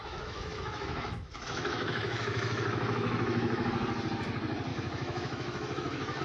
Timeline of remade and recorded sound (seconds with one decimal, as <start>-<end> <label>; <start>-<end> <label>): 0.0-3.7 remade; 3.7-4.7 recorded; 4.7-6.2 remade